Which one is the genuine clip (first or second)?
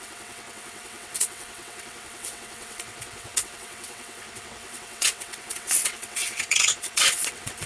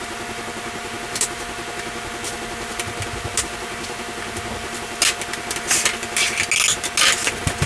second